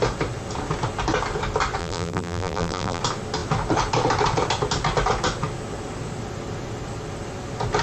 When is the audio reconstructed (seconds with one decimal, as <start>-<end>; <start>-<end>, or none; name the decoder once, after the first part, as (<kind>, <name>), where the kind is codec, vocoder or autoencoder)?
1.8-3.0 (vocoder, BigVGAN v2)